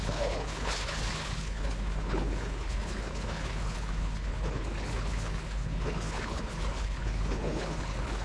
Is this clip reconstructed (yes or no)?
yes